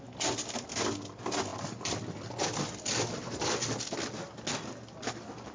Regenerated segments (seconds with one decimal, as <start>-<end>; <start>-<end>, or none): none